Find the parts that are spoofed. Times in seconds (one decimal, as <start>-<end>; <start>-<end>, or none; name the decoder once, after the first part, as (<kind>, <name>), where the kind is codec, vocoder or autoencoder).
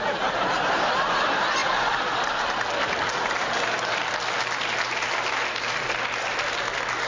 1.6-3.4 (vocoder, BigVGAN v2)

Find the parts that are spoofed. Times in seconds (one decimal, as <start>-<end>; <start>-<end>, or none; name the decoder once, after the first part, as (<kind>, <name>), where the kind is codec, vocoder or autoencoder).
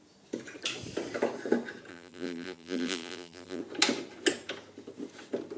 1.9-3.6 (vocoder, BigVGAN v2)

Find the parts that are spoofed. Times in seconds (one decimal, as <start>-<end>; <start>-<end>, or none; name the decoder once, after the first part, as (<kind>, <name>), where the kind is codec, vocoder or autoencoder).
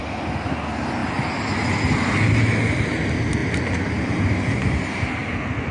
3.4-5.1 (vocoder, BigVGAN v2)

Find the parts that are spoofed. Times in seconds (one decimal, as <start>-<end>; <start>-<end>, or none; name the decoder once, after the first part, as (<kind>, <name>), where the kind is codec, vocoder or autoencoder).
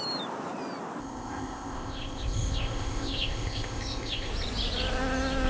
1.0-4.3 (codec, ZipCodec)